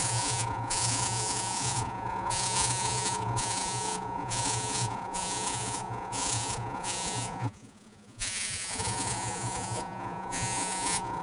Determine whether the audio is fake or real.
fake